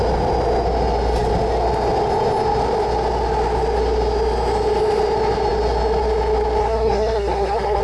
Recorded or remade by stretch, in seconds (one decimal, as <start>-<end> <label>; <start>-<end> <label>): 0.0-6.6 recorded; 6.6-7.8 remade